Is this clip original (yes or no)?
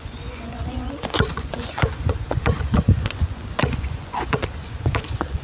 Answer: no